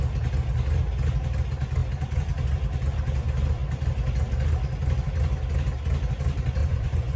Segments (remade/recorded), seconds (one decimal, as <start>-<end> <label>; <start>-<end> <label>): 0.0-6.6 recorded; 6.6-7.2 remade